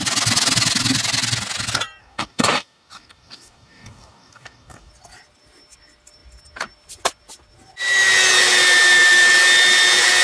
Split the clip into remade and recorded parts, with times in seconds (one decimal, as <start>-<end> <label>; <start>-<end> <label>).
0.0-2.0 recorded; 2.0-4.9 remade; 4.9-10.2 recorded